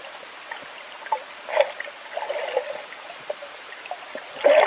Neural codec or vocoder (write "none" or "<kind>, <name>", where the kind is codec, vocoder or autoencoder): none